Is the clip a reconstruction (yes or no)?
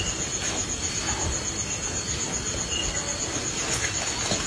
no